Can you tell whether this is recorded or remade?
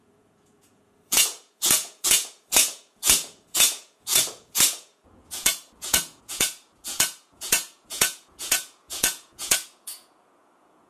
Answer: remade